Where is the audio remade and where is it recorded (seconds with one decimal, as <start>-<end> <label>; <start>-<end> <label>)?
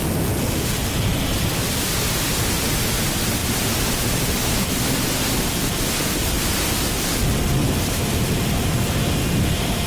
0.0-9.9 recorded